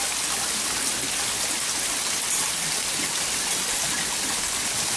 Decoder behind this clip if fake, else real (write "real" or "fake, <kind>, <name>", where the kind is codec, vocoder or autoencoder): real